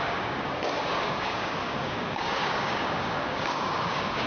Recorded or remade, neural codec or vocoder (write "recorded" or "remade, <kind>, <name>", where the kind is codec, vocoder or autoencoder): remade, codec, DAC